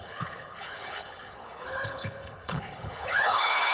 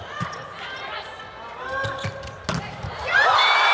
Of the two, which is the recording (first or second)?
second